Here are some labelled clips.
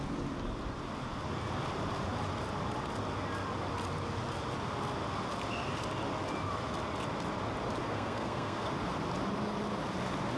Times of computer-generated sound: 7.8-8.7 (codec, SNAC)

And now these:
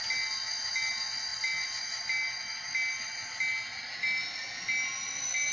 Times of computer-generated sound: none